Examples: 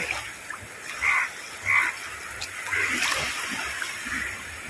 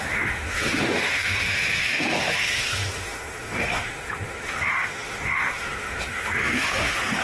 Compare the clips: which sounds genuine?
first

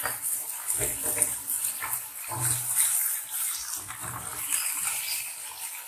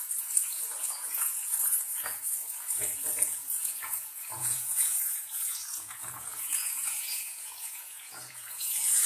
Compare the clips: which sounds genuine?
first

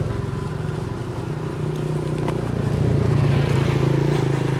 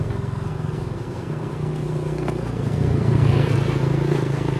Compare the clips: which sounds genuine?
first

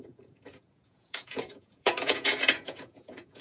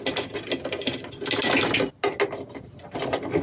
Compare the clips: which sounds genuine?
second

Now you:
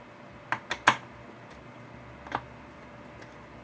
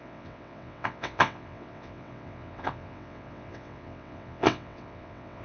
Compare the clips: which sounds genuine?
first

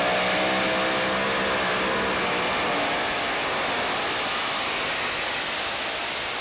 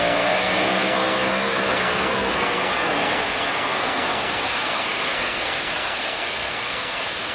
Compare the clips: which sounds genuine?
first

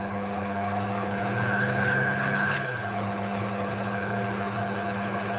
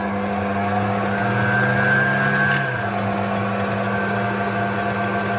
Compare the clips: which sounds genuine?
second